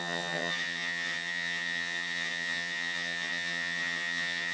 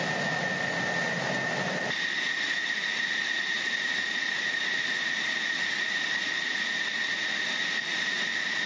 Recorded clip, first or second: second